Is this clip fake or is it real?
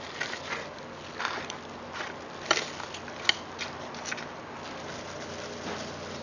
real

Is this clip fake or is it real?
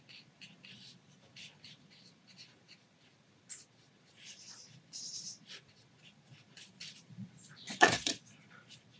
fake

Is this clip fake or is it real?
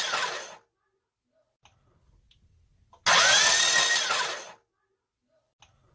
real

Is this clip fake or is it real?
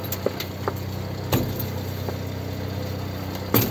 real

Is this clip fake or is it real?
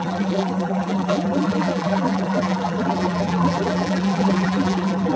fake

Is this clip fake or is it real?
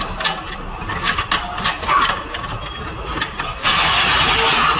real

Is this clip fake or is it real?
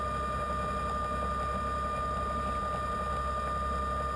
real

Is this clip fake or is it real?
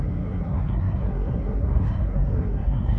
fake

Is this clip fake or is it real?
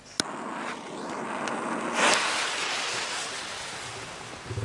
real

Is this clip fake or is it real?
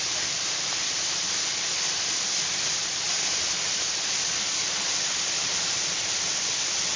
real